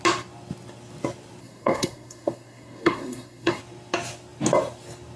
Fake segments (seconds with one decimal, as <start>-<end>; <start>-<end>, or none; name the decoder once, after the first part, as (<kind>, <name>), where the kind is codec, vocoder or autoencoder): 1.4-3.6 (codec, SNAC)